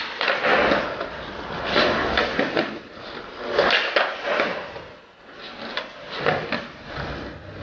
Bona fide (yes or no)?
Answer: yes